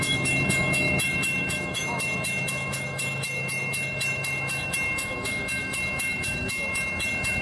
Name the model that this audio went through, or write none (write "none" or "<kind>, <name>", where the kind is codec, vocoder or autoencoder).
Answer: autoencoder, DAC-VAE